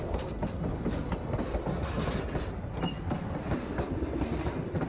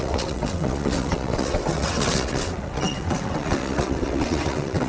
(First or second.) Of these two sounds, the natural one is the first